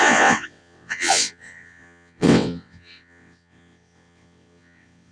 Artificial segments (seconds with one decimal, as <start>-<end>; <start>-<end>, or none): 0.0-5.1